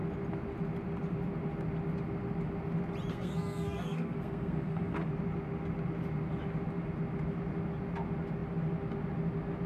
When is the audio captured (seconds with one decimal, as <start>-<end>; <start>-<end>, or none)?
0.0-3.1; 5.1-9.7